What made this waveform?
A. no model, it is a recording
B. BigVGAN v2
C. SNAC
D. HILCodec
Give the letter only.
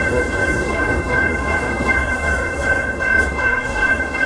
C